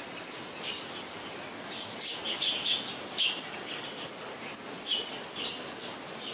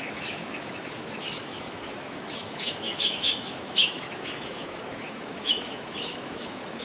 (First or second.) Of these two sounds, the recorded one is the first